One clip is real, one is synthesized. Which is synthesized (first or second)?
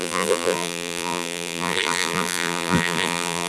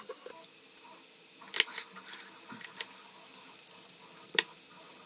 first